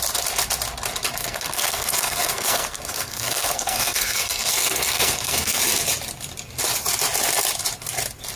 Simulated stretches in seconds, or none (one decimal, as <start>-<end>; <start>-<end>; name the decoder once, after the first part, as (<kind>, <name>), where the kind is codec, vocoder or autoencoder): 1.2-5.6 (codec, SNAC)